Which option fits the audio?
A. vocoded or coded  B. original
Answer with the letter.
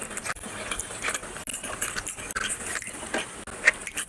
B